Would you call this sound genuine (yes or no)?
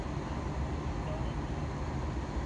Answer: yes